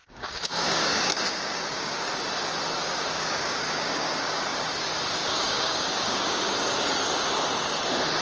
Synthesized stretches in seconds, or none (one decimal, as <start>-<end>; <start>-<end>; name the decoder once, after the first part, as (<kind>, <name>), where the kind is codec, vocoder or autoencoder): 0.0-2.1 (codec, DAC); 2.8-4.4; 5.2-6.4